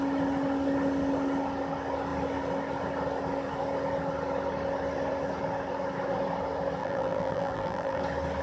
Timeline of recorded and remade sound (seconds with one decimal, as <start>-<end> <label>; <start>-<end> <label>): 0.0-6.8 recorded; 6.8-8.0 remade; 8.0-8.4 recorded